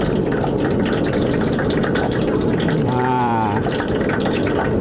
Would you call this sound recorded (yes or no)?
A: no